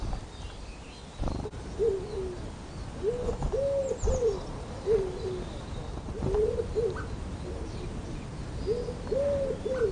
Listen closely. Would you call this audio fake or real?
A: real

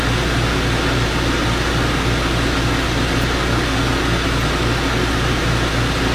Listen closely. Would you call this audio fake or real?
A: real